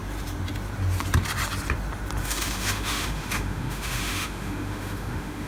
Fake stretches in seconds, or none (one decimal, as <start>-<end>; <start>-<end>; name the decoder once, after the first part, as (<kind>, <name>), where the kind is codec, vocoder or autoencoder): 2.2-5.5 (autoencoder, DAC-VAE)